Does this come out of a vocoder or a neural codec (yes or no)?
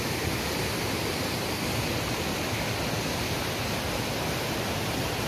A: no